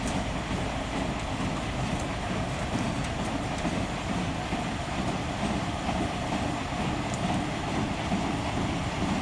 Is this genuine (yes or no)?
no